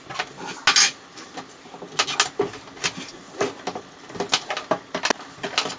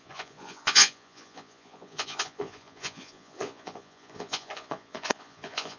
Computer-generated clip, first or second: second